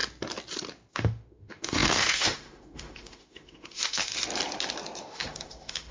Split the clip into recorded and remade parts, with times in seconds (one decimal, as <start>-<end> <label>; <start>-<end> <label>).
0.0-0.9 recorded; 0.9-4.1 remade; 4.1-5.0 recorded; 5.0-5.9 remade